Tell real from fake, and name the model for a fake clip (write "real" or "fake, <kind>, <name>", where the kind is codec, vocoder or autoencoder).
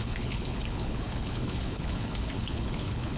fake, codec, HILCodec